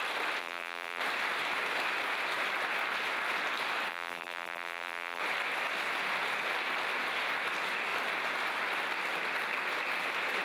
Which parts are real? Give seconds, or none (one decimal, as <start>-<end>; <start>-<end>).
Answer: 0.0-0.4; 1.0-3.9; 5.2-10.4